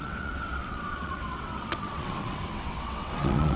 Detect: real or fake fake